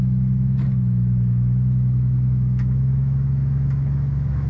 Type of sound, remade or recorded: remade